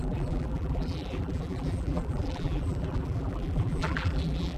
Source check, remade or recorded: remade